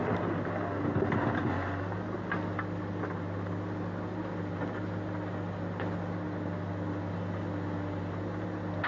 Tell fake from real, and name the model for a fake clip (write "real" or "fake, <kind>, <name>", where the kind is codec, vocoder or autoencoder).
real